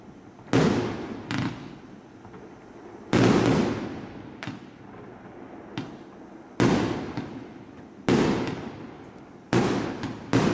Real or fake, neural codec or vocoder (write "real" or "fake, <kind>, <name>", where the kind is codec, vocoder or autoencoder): real